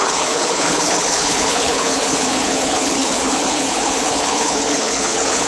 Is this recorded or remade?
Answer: remade